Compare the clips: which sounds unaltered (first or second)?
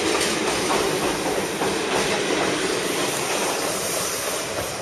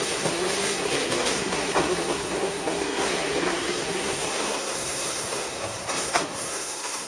first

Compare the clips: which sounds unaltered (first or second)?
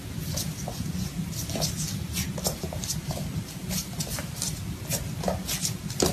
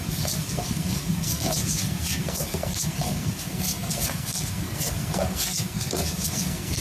first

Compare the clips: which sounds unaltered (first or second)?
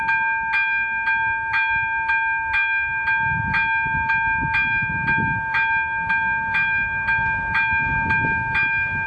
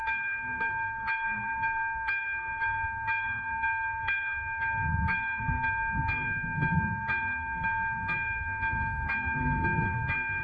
first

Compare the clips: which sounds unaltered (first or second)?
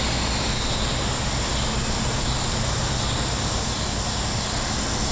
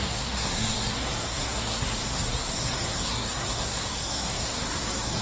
first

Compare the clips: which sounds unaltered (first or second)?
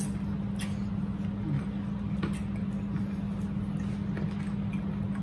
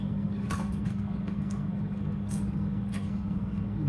first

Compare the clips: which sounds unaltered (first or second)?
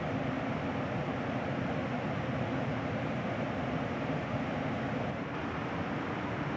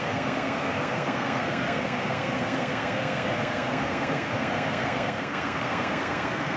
first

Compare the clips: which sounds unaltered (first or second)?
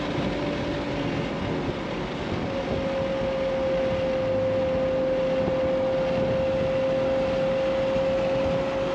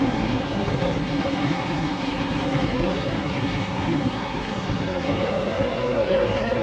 first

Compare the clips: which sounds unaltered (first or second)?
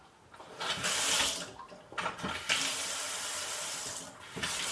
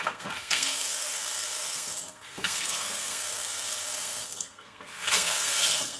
first